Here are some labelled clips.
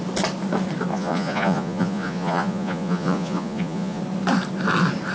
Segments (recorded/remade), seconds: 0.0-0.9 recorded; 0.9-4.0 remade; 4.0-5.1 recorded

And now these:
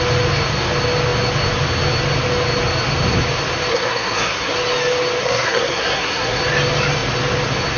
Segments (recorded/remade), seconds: 0.0-3.7 recorded; 3.7-4.5 remade; 4.5-5.2 recorded; 5.2-6.4 remade; 6.4-7.8 recorded

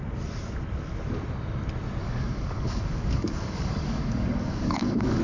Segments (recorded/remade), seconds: 0.0-2.0 recorded; 2.0-5.2 remade

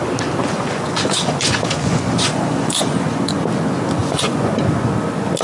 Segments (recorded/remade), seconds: 0.0-0.4 recorded; 0.4-3.4 remade; 3.4-4.0 recorded; 4.0-4.5 remade; 4.5-5.4 recorded

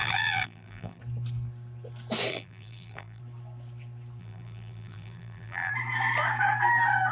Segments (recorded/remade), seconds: 0.0-1.0 remade; 1.0-2.3 recorded; 2.3-3.2 remade; 3.2-4.2 recorded; 4.2-5.7 remade; 5.7-7.1 recorded

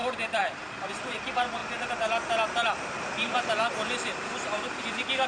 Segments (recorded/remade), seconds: 0.0-1.6 remade; 1.6-4.8 recorded; 4.8-5.3 remade

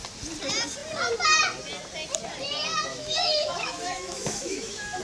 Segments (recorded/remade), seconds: 0.0-2.9 recorded; 2.9-5.0 remade

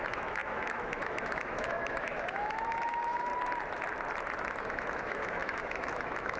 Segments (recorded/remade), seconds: 0.0-3.3 remade; 3.3-4.7 recorded; 4.7-6.4 remade